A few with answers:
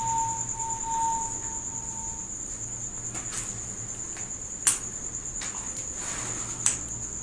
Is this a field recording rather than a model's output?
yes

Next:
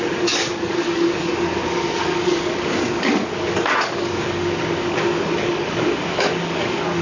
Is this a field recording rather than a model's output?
no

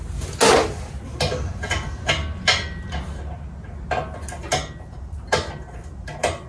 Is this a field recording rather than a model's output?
yes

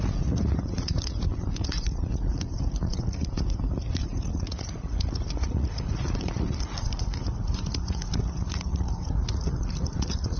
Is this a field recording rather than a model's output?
no